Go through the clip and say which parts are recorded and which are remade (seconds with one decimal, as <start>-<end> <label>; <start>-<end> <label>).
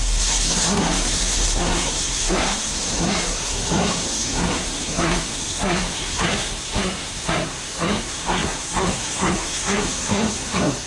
0.0-10.9 remade